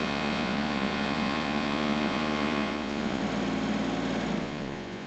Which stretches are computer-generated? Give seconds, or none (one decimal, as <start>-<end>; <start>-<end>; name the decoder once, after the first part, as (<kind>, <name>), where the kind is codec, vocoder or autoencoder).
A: 0.0-3.2 (vocoder, Vocos); 4.4-5.1